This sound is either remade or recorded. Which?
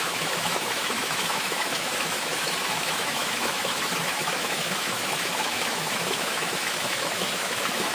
remade